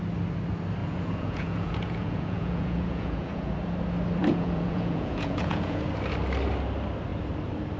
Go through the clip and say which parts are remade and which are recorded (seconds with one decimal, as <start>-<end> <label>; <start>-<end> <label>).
0.0-0.8 recorded; 0.8-3.5 remade; 3.5-4.2 recorded; 4.2-5.8 remade; 5.8-7.8 recorded